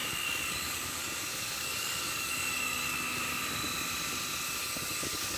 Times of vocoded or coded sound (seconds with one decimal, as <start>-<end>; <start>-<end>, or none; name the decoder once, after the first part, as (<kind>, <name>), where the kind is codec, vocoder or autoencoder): 0.0-3.2 (codec, DAC); 4.6-5.4